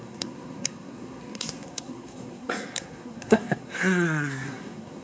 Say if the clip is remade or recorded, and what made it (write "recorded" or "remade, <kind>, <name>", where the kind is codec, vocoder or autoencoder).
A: remade, codec, SNAC